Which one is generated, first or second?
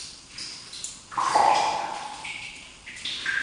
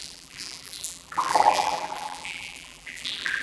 second